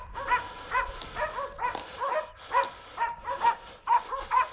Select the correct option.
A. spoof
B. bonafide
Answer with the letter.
B